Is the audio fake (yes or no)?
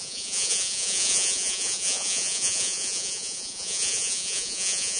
yes